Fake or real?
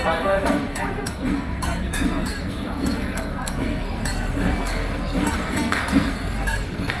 fake